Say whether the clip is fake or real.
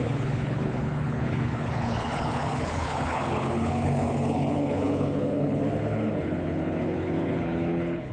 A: fake